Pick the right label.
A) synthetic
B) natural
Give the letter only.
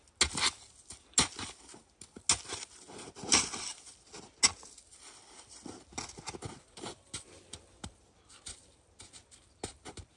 B